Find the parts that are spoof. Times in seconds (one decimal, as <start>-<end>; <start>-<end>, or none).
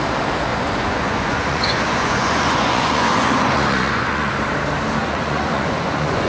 0.5-4.3; 5.0-6.3